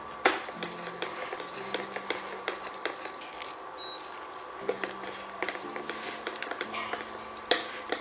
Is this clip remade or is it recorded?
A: recorded